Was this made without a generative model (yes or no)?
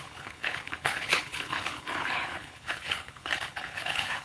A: no